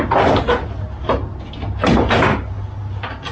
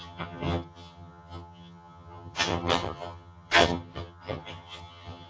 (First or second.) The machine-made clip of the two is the second